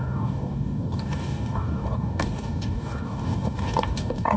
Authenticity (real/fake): fake